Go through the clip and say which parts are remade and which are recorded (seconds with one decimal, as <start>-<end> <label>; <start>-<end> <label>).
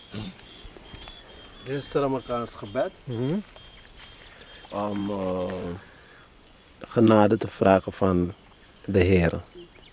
0.0-1.4 remade; 1.4-5.0 recorded; 5.0-8.8 remade; 8.8-9.9 recorded